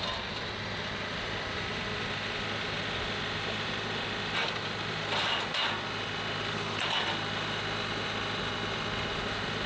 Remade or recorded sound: recorded